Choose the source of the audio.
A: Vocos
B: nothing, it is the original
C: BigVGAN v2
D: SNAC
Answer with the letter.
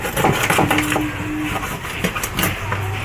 B